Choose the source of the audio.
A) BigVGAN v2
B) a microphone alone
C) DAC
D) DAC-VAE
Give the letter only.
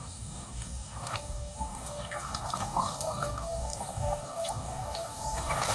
C